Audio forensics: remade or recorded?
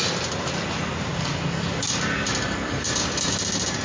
recorded